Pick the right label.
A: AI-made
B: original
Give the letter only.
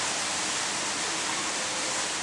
B